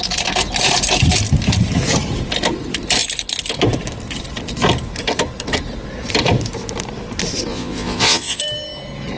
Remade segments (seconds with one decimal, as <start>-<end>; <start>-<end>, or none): 7.5-8.4